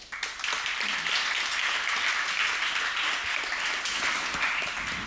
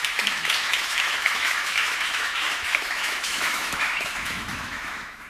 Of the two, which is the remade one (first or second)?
second